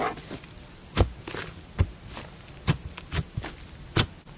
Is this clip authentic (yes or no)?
yes